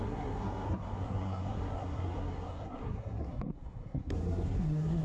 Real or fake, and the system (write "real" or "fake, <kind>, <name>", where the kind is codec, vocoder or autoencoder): fake, codec, SNAC